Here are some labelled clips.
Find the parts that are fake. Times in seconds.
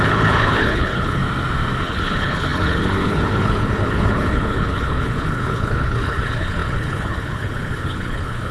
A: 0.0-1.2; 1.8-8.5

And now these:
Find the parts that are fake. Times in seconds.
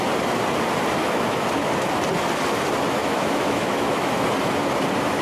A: 1.0-1.7; 3.0-4.1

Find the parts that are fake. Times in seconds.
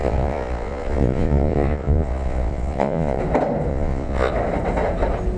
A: 0.0-3.2; 3.7-4.3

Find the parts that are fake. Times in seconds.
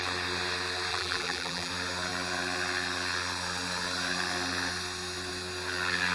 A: 0.9-1.7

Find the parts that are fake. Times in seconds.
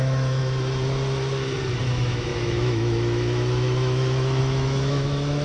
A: 0.0-0.4; 1.8-5.4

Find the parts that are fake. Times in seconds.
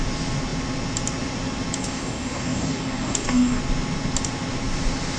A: 1.8-3.6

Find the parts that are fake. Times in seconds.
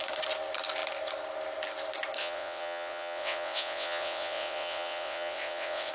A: 2.2-5.9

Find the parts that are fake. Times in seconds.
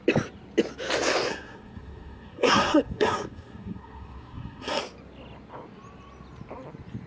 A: 1.3-4.8